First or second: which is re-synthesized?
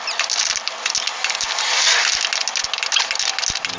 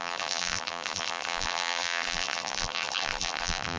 second